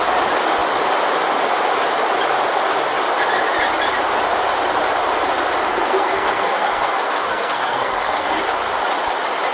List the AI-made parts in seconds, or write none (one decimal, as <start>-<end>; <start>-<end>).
5.7-8.4